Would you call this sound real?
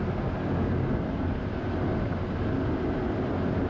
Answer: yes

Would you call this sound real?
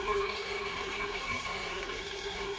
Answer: no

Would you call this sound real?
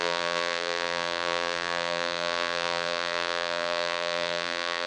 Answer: no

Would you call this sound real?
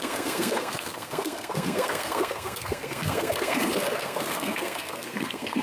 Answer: no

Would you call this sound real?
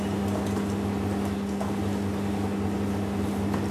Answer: yes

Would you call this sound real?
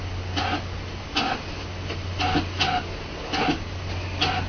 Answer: yes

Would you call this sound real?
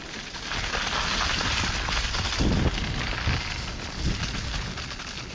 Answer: yes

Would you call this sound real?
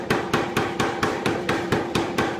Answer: no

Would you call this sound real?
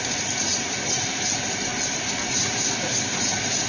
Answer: yes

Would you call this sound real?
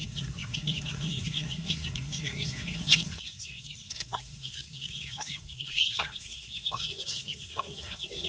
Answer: no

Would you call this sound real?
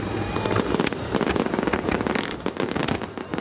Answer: yes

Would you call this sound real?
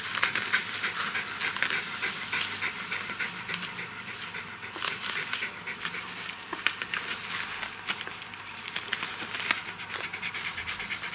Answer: yes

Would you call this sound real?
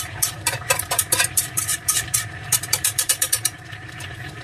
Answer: no